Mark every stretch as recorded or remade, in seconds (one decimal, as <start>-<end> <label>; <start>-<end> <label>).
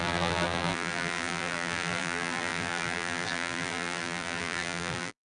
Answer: 0.0-5.3 remade